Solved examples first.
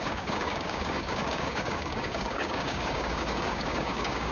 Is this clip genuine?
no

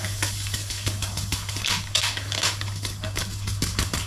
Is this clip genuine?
no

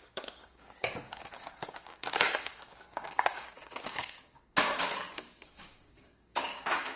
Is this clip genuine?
no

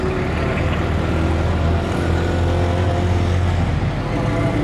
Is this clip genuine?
yes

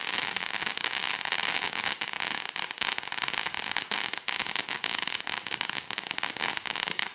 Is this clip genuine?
no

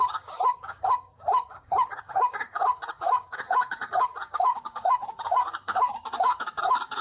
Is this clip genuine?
no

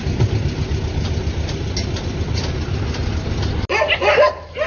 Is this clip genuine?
yes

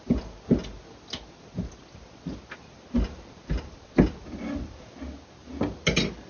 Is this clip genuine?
yes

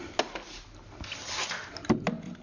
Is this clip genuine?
yes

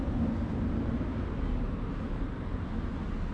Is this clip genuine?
yes